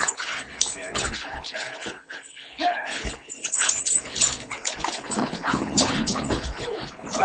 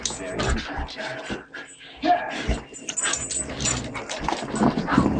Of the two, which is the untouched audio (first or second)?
second